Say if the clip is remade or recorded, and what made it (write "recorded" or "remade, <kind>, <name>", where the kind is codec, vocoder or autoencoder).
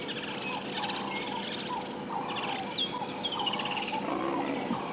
recorded